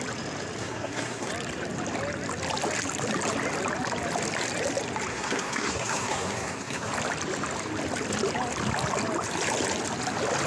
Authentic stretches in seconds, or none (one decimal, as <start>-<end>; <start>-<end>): 0.0-0.6; 1.3-5.1; 6.9-10.5